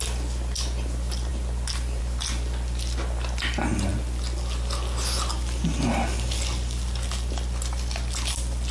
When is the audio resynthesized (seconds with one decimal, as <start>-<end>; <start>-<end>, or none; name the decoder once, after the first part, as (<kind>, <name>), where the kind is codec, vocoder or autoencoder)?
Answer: none